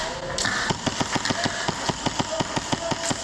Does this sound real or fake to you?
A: real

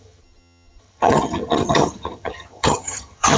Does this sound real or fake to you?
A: fake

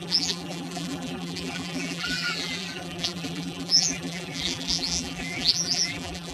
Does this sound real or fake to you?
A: fake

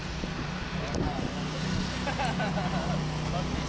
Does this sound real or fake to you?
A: real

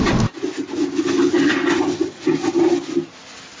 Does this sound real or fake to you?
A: real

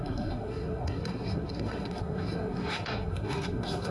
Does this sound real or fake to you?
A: fake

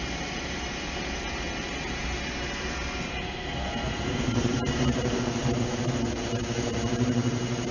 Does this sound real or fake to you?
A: fake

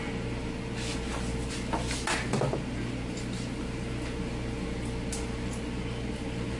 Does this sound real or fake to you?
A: real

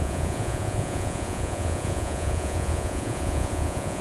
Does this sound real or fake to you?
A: fake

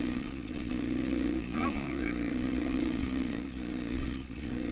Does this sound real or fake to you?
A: fake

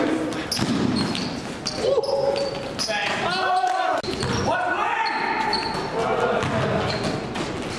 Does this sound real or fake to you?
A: real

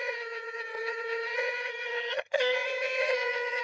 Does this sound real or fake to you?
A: fake